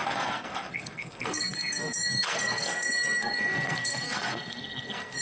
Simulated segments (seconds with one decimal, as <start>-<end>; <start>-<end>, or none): 0.0-5.2